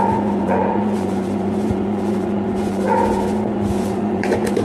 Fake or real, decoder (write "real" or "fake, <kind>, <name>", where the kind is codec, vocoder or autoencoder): fake, vocoder, Vocos